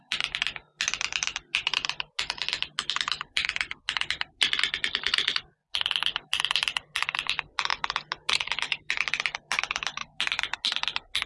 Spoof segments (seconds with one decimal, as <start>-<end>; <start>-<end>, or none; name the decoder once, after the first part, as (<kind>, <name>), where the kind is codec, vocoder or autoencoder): none

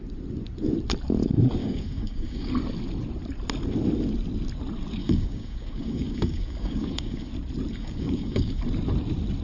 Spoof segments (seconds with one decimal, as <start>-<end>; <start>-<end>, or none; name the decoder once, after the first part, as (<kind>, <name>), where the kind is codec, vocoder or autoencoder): 1.6-2.5 (codec, DAC); 5.0-7.3; 7.7-8.6

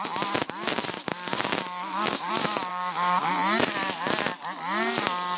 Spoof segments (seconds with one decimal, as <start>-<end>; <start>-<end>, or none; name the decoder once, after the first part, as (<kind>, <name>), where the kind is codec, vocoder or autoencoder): 1.1-2.3 (codec, DAC); 2.7-3.3

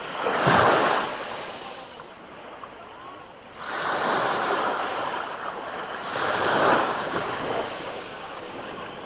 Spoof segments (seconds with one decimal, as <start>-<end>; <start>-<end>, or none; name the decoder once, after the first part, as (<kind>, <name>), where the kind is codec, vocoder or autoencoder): 6.1-8.7 (codec, DAC)

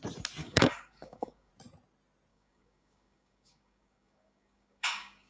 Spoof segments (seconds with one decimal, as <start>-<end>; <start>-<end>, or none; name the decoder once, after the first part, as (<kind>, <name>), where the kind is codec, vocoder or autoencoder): 0.4-1.5 (codec, DAC); 2.3-5.3

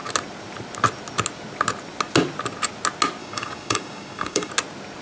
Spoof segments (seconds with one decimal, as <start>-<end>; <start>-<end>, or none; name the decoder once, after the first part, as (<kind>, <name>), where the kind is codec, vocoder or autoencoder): 3.2-4.5 (codec, DAC)

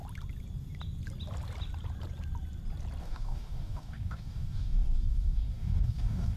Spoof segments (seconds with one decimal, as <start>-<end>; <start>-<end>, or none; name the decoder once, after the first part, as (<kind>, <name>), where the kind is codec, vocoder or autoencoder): 3.0-6.4 (codec, DAC)